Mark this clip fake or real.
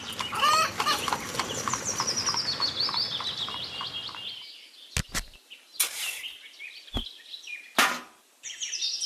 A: real